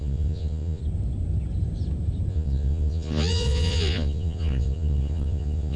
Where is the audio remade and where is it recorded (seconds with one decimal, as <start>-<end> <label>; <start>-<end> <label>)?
0.0-0.8 remade; 0.8-2.3 recorded; 2.3-5.8 remade